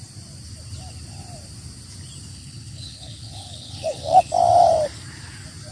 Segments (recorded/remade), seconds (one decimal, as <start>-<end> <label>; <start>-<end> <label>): 0.0-2.3 recorded; 2.3-4.3 remade; 4.3-5.7 recorded